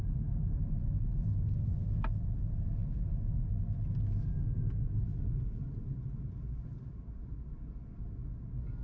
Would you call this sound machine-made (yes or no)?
no